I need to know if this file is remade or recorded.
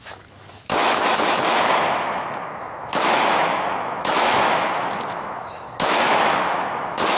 remade